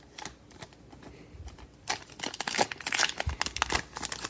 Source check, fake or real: real